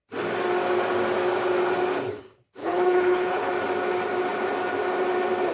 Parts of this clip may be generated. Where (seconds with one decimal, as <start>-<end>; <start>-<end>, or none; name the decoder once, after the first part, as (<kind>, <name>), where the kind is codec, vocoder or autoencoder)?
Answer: 2.6-3.5 (codec, HILCodec)